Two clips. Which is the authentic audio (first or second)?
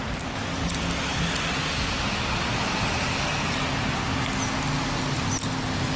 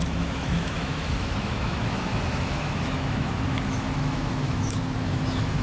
first